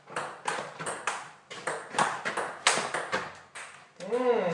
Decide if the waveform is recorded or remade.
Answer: recorded